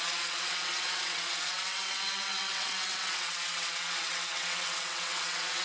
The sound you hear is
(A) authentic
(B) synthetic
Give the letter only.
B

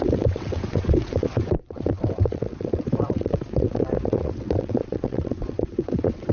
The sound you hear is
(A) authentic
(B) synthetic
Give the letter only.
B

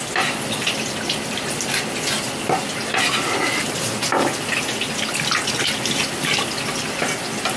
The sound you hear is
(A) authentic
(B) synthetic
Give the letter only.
A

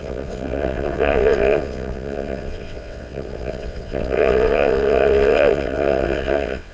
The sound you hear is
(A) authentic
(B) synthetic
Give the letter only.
B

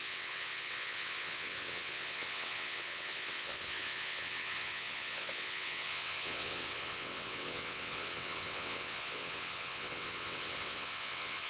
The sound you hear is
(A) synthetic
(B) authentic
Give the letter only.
A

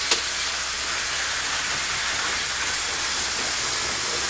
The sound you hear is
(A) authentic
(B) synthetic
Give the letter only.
A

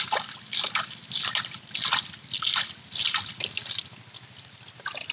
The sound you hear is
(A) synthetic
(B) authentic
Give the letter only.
B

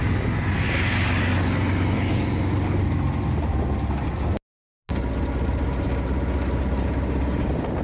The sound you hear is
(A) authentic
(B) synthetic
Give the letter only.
A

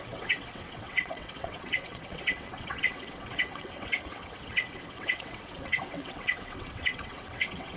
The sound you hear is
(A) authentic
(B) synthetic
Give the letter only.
B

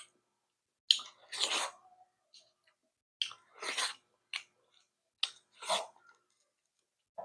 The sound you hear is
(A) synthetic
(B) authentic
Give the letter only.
B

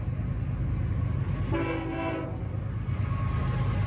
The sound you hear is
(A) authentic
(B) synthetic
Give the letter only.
A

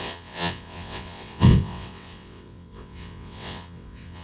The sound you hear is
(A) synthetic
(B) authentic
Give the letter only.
A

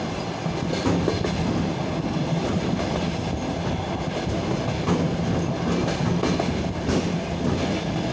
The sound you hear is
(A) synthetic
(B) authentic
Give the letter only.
B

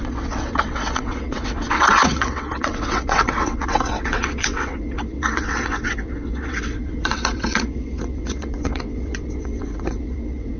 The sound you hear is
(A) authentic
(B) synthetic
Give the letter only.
B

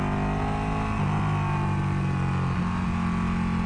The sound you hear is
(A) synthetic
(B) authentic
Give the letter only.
B